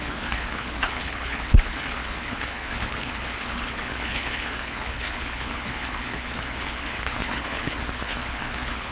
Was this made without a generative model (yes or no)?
no